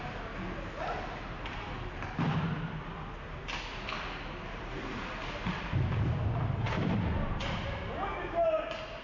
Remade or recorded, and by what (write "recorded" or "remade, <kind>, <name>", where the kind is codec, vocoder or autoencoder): recorded